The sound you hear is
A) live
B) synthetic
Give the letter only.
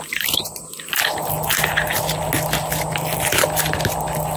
A